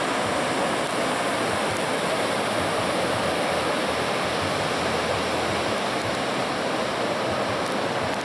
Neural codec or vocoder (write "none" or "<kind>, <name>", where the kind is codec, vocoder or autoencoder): none